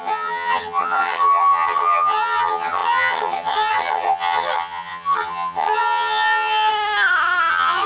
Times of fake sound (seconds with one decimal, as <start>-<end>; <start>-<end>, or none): 0.0-6.7; 7.5-7.9